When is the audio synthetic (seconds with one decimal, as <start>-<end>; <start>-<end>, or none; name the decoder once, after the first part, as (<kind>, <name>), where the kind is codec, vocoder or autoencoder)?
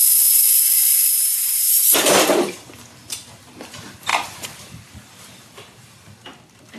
0.0-0.7 (vocoder, BigVGAN v2); 1.4-2.8; 4.1-5.8